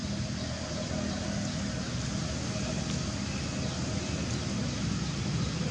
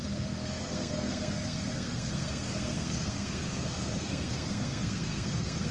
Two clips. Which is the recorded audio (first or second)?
first